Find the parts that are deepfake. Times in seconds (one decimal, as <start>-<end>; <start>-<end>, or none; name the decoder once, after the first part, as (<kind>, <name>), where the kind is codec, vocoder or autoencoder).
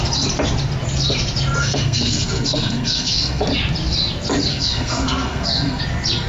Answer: 1.6-3.4 (codec, SNAC); 4.5-5.8